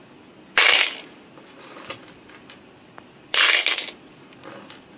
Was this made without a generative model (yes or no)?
yes